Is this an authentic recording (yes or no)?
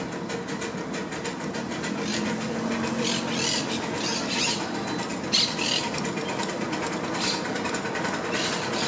yes